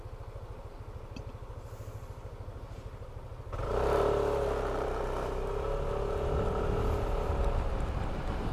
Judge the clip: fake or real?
real